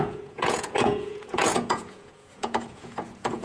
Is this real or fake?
fake